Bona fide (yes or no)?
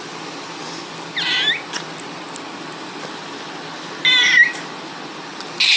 yes